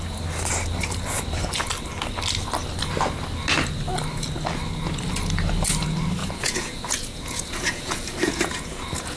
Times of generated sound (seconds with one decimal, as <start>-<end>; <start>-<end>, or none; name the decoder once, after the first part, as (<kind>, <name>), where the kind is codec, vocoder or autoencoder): 6.2-9.2 (vocoder, Vocos)